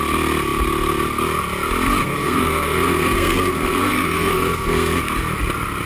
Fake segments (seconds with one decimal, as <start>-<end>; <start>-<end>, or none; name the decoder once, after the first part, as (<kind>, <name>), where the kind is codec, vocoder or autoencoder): 2.0-5.0 (codec, SNAC)